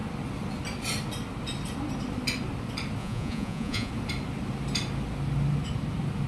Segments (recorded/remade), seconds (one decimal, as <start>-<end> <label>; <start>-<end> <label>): 0.0-3.0 recorded; 3.0-3.9 remade; 3.9-6.3 recorded